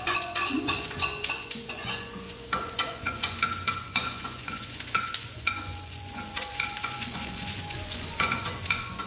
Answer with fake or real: fake